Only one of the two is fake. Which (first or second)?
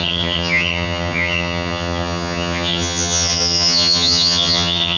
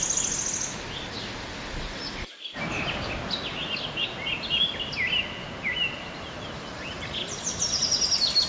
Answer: first